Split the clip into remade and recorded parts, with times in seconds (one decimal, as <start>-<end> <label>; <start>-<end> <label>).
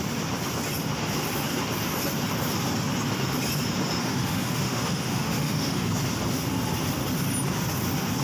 0.0-4.0 recorded; 4.0-5.9 remade; 5.9-8.2 recorded